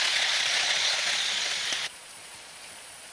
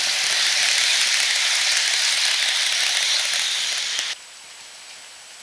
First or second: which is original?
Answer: second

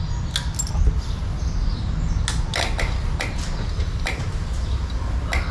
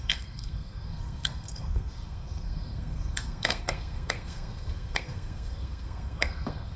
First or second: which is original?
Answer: first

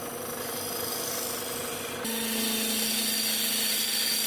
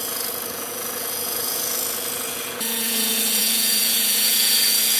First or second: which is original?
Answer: first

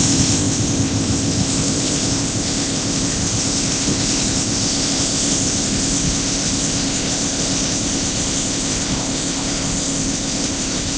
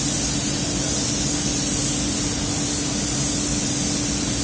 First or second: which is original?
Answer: second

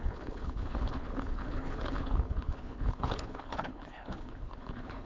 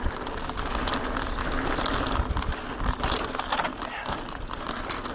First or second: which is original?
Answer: second